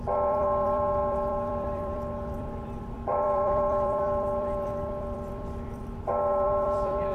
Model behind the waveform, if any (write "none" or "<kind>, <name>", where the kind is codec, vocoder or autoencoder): vocoder, BigVGAN v2